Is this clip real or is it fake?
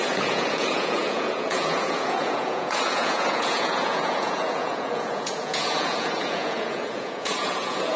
fake